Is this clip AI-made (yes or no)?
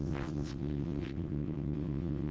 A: yes